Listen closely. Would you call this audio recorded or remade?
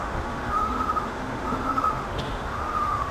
remade